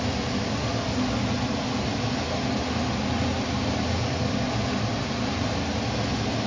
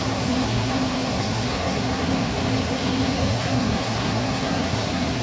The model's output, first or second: second